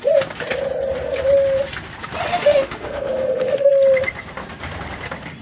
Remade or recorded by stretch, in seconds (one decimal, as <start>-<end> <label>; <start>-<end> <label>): 0.0-2.3 recorded; 2.3-3.7 remade; 3.7-5.4 recorded